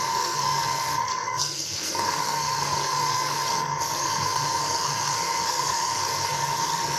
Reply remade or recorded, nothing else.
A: remade